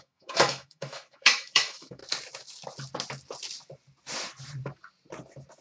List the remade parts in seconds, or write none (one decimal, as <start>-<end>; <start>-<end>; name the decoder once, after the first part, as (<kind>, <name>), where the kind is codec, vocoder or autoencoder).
0.0-2.0 (autoencoder, DAC-VAE)